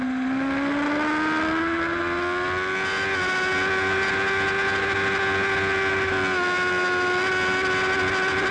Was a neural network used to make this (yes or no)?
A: no